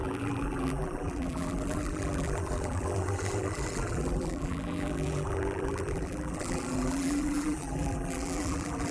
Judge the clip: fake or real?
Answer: fake